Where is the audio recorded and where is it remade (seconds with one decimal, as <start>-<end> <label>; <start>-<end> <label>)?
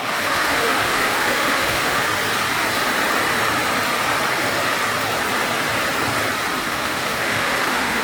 0.0-2.1 remade; 2.1-6.6 recorded; 6.6-8.0 remade